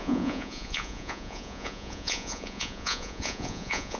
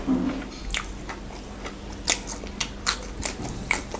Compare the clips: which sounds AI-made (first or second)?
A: first